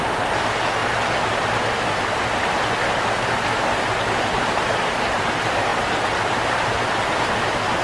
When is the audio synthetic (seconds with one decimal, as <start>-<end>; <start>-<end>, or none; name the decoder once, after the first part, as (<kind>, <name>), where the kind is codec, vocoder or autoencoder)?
none